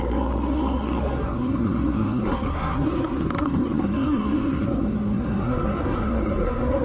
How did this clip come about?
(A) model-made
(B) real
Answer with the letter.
A